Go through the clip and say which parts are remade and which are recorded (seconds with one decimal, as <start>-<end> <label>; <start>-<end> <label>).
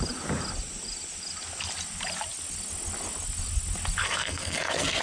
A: 0.0-4.0 recorded; 4.0-5.0 remade